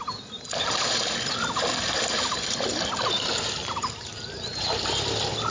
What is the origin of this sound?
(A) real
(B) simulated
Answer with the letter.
A